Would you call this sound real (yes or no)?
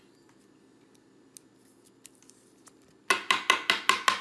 yes